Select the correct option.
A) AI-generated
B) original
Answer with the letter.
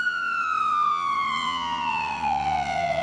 A